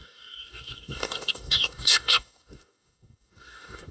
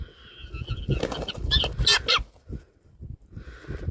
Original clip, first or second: second